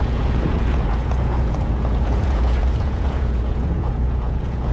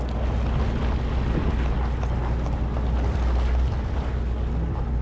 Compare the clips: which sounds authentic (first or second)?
second